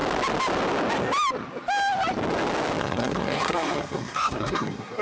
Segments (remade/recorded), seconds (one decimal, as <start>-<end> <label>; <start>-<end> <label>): 0.0-2.8 recorded; 2.8-5.0 remade